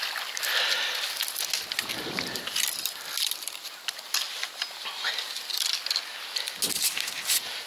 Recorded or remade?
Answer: recorded